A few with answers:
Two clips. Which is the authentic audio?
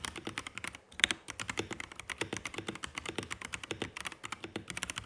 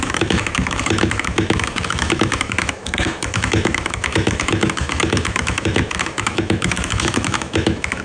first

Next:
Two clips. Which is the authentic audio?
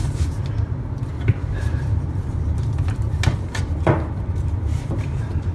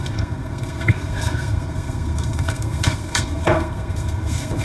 first